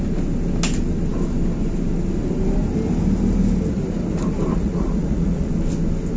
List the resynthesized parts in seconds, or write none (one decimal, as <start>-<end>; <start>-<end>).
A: 4.5-5.5